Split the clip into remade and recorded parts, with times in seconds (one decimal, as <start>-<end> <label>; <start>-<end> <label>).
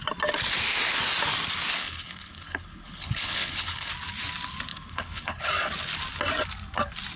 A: 0.0-1.8 recorded; 1.8-3.9 remade; 3.9-4.7 recorded; 4.7-5.5 remade; 5.5-7.2 recorded